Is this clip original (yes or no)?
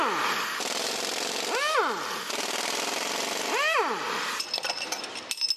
yes